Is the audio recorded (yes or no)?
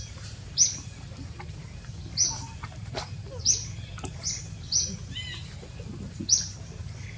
yes